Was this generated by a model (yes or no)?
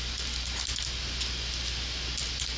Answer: no